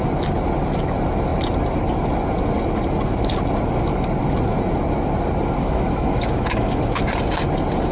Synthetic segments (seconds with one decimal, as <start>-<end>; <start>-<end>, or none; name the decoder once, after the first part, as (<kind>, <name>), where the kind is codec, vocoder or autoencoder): 5.6-7.0 (autoencoder, DAC-VAE)